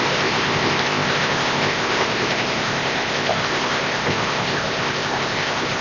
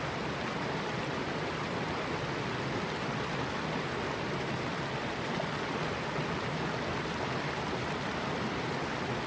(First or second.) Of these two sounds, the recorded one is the second